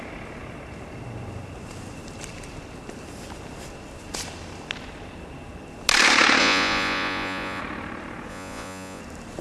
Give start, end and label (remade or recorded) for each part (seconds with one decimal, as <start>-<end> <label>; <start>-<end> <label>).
0.0-6.4 recorded; 6.4-7.6 remade; 7.6-8.3 recorded; 8.3-9.0 remade; 9.0-9.4 recorded